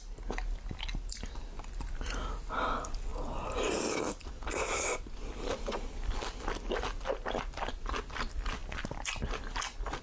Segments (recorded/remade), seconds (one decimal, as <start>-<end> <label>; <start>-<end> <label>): 0.0-10.0 recorded